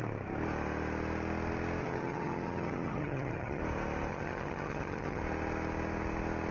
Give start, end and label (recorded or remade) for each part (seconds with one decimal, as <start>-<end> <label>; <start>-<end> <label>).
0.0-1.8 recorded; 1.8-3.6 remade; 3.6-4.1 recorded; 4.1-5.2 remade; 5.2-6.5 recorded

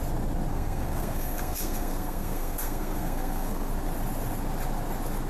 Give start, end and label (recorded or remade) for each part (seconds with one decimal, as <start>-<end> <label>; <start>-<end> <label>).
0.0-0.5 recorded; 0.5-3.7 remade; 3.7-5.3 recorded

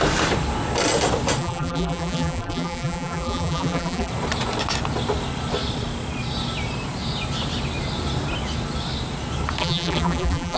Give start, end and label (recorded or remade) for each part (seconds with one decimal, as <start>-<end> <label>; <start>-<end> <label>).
0.0-1.4 recorded; 1.4-4.1 remade; 4.1-9.6 recorded; 9.6-10.6 remade

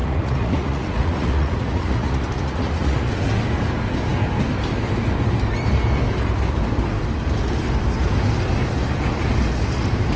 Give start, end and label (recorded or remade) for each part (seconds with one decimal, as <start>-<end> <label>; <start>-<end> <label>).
0.0-3.1 remade; 3.1-10.2 recorded

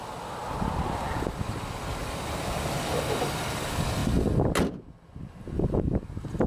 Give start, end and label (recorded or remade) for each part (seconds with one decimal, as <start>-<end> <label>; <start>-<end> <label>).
0.0-2.0 recorded; 2.0-3.0 remade; 3.0-6.5 recorded

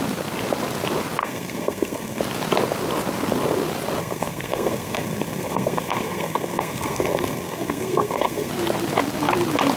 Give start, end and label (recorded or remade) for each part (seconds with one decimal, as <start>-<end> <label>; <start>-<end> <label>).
0.0-1.2 recorded; 1.2-2.2 remade; 2.2-4.0 recorded; 4.0-8.5 remade; 8.5-9.8 recorded

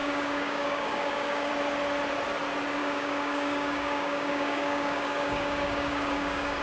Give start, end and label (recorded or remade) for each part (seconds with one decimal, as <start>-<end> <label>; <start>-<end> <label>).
0.0-1.5 remade; 1.5-2.8 recorded; 2.8-6.6 remade